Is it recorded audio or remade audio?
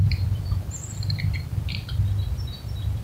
remade